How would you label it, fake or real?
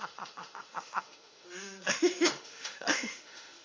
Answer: fake